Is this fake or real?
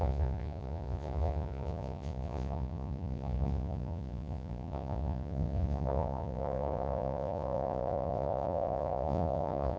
fake